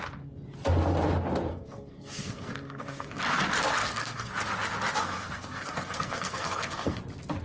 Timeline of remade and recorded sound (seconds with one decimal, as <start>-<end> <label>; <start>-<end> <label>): 0.0-1.5 recorded; 1.5-3.2 remade; 3.2-3.8 recorded; 3.8-4.3 remade; 4.3-5.0 recorded; 5.0-7.0 remade; 7.0-7.4 recorded